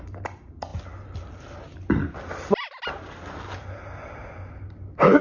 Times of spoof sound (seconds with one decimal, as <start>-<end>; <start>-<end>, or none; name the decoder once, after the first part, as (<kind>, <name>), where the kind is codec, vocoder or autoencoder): none

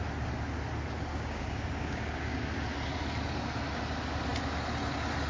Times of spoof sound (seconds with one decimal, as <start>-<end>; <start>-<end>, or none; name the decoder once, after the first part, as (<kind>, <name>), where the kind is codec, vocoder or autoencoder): 1.1-2.5 (codec, DAC)

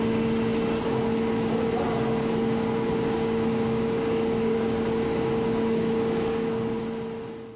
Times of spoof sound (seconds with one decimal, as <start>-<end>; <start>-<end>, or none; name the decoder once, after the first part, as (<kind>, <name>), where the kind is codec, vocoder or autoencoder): 2.2-6.8 (codec, DAC)

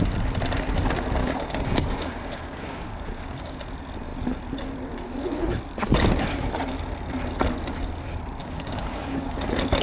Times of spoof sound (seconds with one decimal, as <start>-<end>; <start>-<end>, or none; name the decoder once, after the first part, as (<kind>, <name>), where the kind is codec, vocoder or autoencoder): 1.2-3.6 (codec, DAC); 8.4-9.3

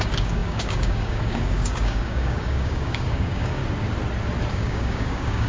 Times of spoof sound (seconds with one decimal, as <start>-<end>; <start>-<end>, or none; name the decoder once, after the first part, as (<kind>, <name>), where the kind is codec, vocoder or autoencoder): 0.0-3.6 (codec, DAC); 4.5-5.5